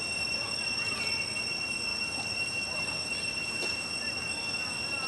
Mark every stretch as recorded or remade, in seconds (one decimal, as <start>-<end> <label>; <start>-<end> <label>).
0.0-5.1 recorded